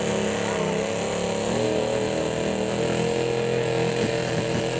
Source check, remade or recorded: recorded